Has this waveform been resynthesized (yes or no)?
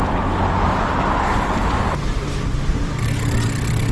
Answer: no